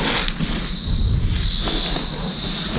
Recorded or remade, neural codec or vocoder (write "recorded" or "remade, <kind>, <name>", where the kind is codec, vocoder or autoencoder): recorded